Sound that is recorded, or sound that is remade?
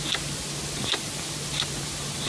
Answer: recorded